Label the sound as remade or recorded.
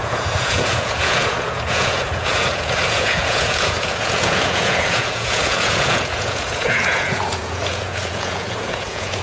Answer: remade